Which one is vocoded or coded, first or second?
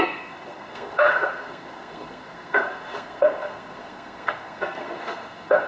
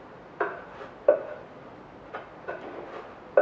first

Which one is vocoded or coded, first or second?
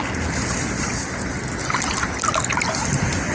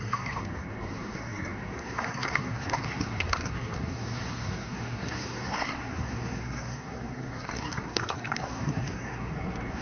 second